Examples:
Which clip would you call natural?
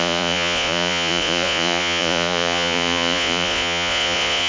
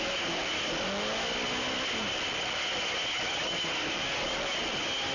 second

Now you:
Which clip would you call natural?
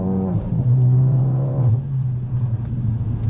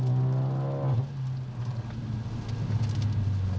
second